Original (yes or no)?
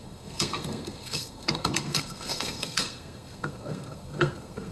no